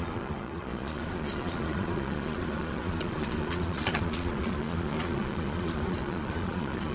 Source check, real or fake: fake